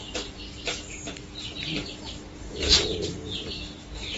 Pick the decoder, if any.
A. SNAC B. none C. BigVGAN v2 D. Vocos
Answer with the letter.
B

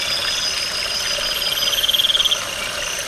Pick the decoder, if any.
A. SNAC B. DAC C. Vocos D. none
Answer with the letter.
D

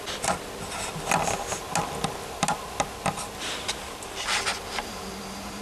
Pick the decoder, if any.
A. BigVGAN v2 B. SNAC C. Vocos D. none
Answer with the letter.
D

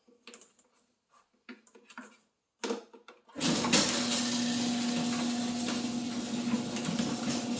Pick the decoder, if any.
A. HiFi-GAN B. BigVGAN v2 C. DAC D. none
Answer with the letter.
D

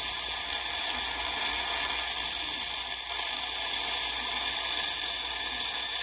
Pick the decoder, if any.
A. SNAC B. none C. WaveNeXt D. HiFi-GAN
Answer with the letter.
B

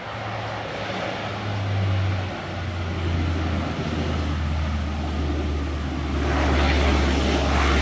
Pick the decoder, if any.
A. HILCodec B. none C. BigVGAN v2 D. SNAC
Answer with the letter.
B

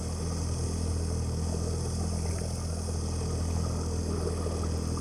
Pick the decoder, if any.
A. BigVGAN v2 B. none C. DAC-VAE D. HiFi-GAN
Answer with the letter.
B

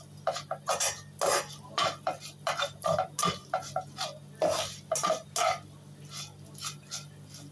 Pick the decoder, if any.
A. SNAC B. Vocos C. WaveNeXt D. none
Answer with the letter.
D